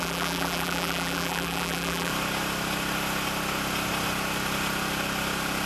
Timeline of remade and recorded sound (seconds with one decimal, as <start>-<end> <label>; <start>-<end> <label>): 0.0-2.1 remade; 2.1-5.7 recorded